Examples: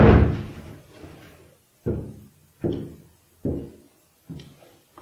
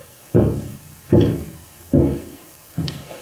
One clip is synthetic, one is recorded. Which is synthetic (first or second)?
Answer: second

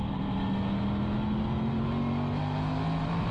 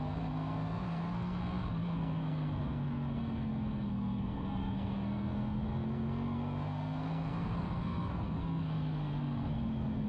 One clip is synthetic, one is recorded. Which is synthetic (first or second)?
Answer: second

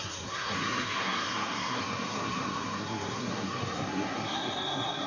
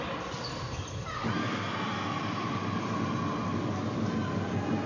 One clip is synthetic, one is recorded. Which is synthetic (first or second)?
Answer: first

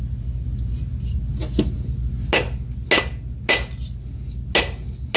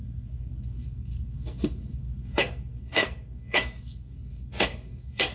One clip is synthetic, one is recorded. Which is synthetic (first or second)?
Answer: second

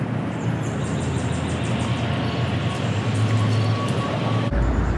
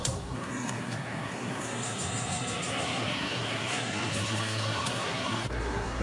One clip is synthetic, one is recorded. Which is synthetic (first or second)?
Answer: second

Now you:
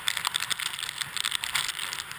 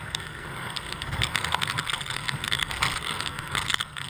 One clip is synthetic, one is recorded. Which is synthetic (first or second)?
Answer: second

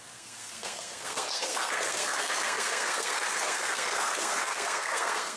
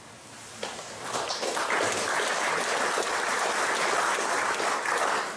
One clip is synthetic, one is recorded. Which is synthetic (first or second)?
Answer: first